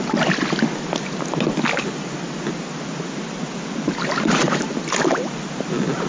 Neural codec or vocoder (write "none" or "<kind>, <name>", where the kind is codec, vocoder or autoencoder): none